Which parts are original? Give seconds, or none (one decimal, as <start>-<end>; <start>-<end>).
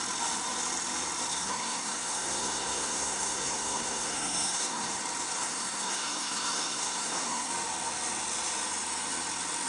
0.0-1.3; 5.0-5.4; 7.5-9.7